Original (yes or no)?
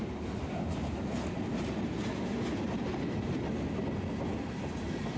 yes